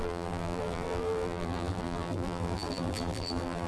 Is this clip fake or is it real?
fake